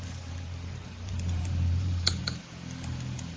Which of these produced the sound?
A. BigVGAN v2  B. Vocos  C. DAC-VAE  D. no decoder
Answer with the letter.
A